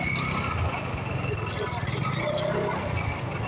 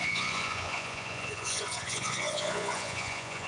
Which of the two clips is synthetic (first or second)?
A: second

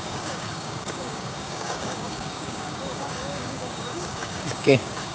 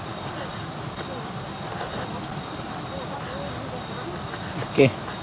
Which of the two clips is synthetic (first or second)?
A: first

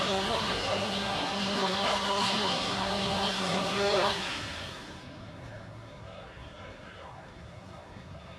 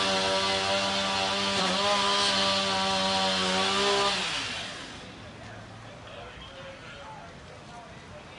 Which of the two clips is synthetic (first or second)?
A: first